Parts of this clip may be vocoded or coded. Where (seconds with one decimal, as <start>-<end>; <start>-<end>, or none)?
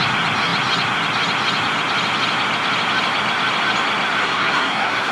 4.2-5.1